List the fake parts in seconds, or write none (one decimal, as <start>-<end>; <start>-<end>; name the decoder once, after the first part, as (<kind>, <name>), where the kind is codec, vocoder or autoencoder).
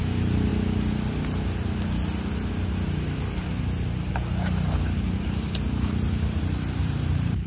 0.0-0.5 (vocoder, BigVGAN v2); 4.1-7.5